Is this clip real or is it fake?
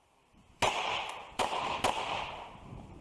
fake